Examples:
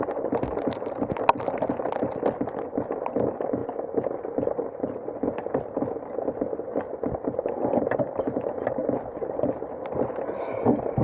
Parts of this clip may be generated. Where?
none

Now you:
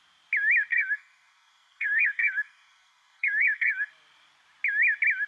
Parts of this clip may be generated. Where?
0.7-3.9 (codec, SNAC)

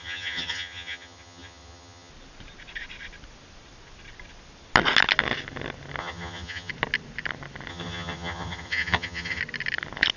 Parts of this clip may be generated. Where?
0.0-2.1 (vocoder, HiFi-GAN); 6.0-6.7; 7.7-9.4

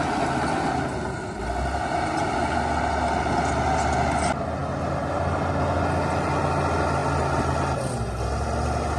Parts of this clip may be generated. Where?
none

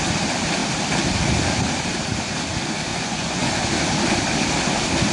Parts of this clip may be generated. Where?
2.9-3.6 (vocoder, Vocos)

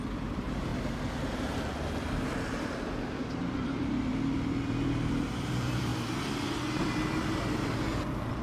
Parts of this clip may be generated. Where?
0.0-0.7 (vocoder, BigVGAN v2); 3.3-5.9

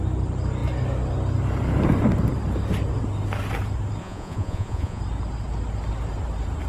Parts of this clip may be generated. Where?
4.0-5.0 (vocoder, Vocos)